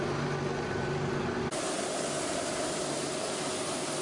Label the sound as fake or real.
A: real